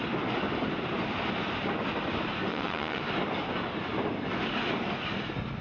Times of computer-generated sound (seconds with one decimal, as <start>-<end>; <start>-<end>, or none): 2.5-3.0